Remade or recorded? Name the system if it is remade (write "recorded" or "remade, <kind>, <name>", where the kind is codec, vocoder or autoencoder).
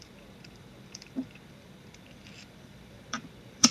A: remade, vocoder, BigVGAN v2